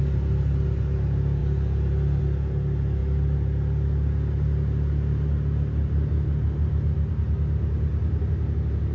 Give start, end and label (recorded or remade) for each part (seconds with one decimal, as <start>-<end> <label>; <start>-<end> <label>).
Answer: 0.0-8.9 recorded